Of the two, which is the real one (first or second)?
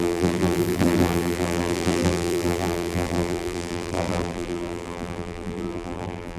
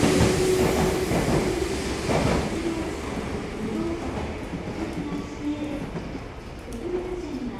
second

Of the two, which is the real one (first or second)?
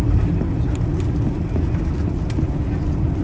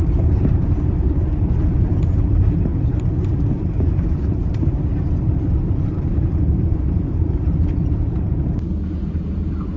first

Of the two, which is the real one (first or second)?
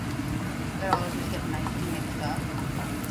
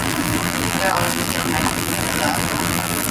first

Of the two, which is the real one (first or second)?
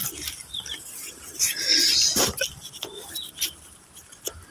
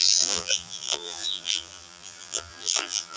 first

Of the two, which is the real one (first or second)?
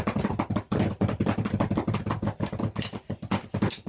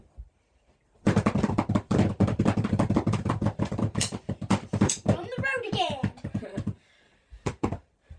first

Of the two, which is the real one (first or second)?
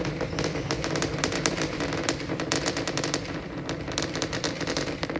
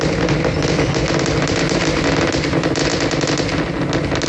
second